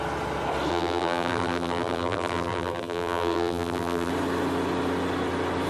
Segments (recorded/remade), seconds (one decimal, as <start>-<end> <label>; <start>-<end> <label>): 0.0-0.7 recorded; 0.7-4.1 remade; 4.1-5.7 recorded